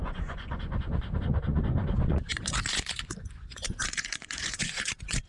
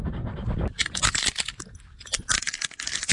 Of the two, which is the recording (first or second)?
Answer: second